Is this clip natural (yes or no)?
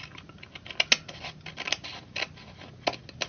yes